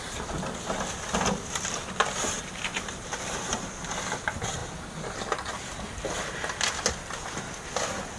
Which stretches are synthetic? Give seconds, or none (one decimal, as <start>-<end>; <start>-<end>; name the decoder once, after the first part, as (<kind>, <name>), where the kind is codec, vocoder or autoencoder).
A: 2.7-3.7 (vocoder, BigVGAN v2)